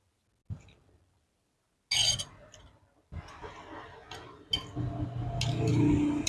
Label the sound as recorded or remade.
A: recorded